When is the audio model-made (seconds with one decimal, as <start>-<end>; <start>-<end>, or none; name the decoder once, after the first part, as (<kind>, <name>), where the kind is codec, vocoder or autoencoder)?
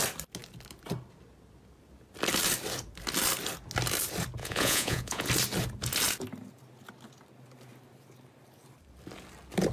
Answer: 4.4-5.3 (vocoder, Vocos)